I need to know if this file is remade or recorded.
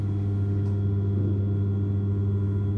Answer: recorded